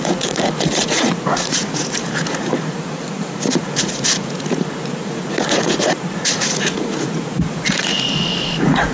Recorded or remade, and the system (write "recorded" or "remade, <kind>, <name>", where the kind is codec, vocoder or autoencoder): remade, vocoder, Vocos